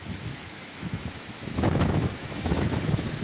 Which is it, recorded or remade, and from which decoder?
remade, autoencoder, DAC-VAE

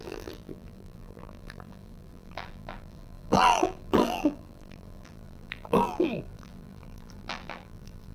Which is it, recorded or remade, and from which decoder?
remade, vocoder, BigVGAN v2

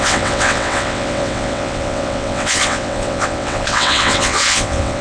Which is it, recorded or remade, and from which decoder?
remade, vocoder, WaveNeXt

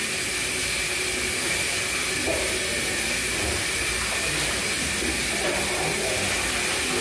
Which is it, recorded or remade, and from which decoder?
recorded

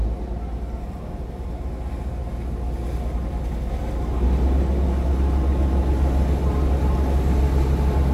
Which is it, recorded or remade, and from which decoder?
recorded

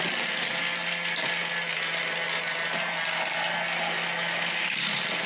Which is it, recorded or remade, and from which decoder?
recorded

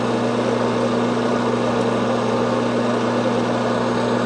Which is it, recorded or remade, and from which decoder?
recorded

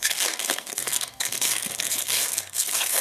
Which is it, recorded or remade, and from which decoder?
remade, codec, SNAC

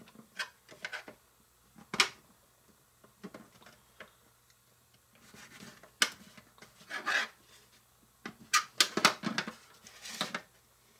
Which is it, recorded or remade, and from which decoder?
recorded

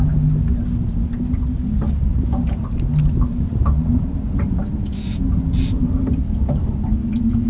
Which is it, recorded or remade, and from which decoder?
recorded